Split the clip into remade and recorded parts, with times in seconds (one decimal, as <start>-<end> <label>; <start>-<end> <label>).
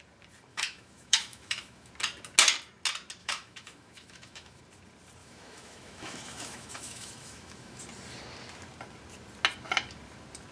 0.0-0.5 recorded; 0.5-1.9 remade; 1.9-3.2 recorded; 3.2-4.6 remade; 4.6-5.2 recorded; 5.2-7.8 remade; 7.8-10.5 recorded